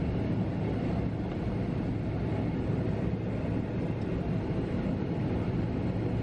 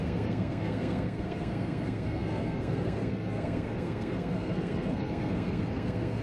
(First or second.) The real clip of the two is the first